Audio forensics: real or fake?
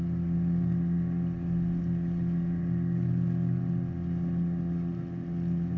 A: real